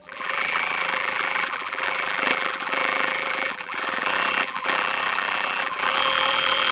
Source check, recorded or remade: remade